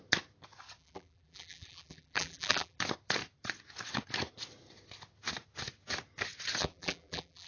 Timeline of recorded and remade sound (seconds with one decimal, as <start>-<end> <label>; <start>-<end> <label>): 0.0-0.8 recorded; 0.8-2.8 remade; 2.8-6.6 recorded; 6.6-7.5 remade

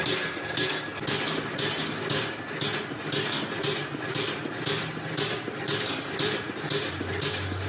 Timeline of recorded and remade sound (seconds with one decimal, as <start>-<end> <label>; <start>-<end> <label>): 0.0-7.7 recorded

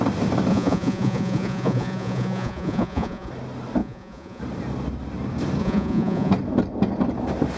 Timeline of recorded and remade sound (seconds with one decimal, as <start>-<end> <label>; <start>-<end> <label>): 0.0-0.5 recorded; 0.5-3.3 remade; 3.3-3.8 recorded; 3.8-4.4 remade; 4.4-5.6 recorded; 5.6-6.3 remade; 6.3-7.6 recorded

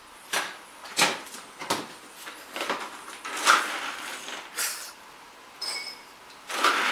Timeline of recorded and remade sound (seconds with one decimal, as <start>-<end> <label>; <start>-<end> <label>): 0.0-1.6 remade; 1.6-5.7 recorded; 5.7-6.9 remade

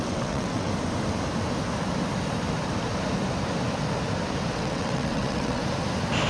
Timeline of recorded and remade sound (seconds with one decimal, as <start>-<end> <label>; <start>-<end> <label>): 0.0-0.7 remade; 0.7-4.5 recorded; 4.5-5.6 remade; 5.6-6.3 recorded

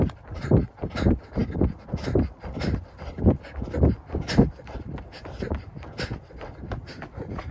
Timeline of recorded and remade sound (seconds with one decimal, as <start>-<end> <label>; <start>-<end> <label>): 0.0-7.5 recorded